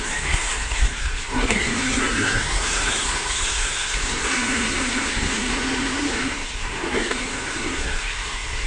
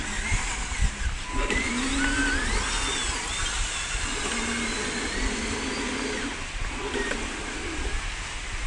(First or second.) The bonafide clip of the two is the second